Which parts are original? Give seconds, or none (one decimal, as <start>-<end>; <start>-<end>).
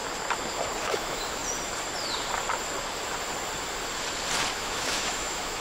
0.0-0.8; 1.4-4.5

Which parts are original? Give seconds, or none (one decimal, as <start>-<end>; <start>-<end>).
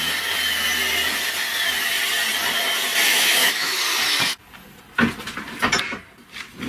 0.0-3.1; 3.8-6.7